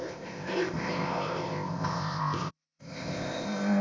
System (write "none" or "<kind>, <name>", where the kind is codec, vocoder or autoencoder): codec, ZipCodec